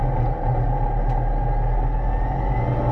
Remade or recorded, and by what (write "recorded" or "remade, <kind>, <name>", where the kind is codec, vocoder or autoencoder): recorded